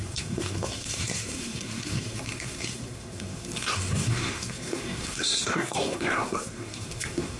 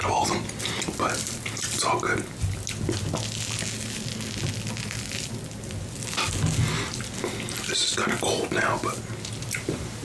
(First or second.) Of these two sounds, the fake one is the first